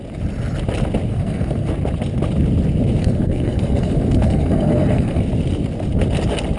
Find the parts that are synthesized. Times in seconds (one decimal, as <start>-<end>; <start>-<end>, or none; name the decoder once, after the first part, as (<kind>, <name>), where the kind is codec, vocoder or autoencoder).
1.1-1.7 (codec, SNAC); 3.0-5.2